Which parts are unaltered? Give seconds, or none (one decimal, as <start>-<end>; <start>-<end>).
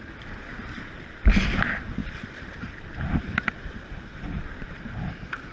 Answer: 0.0-3.6; 4.6-5.5